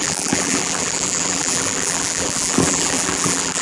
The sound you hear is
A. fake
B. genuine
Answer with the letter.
A